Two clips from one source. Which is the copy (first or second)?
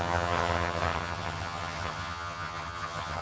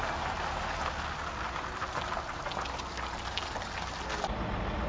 first